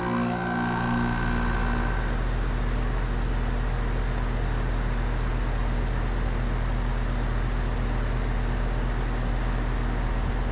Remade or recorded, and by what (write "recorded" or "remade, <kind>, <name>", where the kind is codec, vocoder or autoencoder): recorded